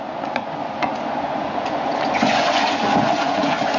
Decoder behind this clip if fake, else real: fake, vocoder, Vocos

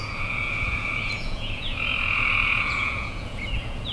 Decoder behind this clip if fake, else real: fake, vocoder, Vocos